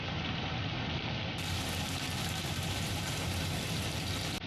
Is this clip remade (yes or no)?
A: no